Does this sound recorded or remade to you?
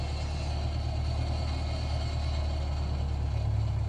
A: recorded